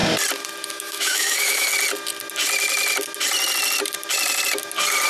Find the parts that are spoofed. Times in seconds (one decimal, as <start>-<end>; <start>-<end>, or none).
0.7-1.7